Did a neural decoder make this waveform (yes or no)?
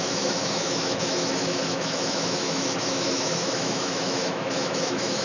yes